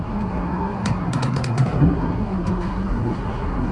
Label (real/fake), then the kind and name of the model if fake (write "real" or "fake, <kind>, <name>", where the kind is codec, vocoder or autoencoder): fake, codec, SNAC